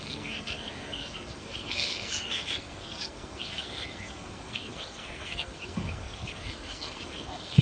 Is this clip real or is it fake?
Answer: fake